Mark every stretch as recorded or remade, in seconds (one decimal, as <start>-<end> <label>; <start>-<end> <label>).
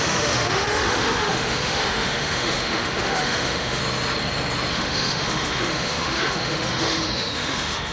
0.0-3.8 remade; 3.8-4.7 recorded; 4.7-7.9 remade